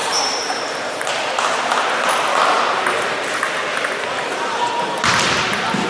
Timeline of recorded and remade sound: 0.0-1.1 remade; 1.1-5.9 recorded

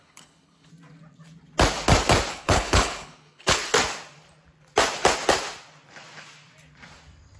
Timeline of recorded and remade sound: 0.0-0.7 remade; 0.7-2.3 recorded; 2.3-3.6 remade; 3.6-7.4 recorded

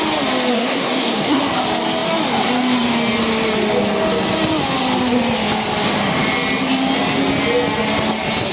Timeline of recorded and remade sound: 0.0-0.5 recorded; 0.5-1.4 remade; 1.4-8.5 recorded

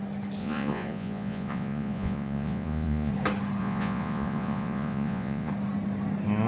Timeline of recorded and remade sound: 0.0-0.4 recorded; 0.4-3.1 remade; 3.1-3.6 recorded; 3.6-5.5 remade; 5.5-6.5 recorded

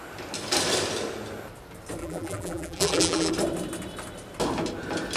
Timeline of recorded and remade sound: 0.0-2.0 recorded; 2.0-3.3 remade; 3.3-5.2 recorded

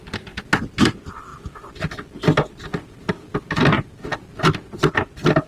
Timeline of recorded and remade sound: 0.0-5.5 recorded